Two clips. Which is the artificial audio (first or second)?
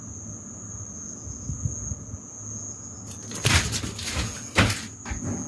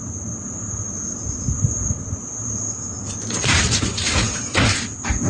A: second